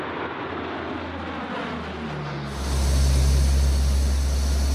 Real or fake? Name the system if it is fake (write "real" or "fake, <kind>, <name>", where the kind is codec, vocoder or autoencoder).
real